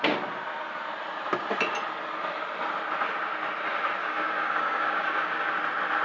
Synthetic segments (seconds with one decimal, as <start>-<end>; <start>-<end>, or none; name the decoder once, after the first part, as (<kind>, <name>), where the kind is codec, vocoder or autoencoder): 4.0-5.5 (codec, DAC)